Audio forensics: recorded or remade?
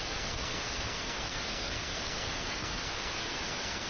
remade